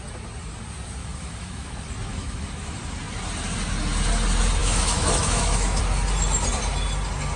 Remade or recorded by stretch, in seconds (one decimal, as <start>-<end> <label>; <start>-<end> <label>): 0.0-1.0 recorded; 1.0-1.7 remade; 1.7-2.1 recorded; 2.1-2.8 remade; 2.8-4.6 recorded; 4.6-5.8 remade; 5.8-7.4 recorded